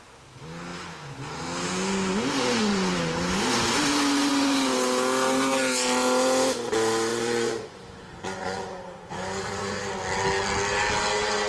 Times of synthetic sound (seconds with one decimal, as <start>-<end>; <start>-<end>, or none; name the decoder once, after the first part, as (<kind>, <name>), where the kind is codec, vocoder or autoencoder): 7.1-9.8 (vocoder, Vocos)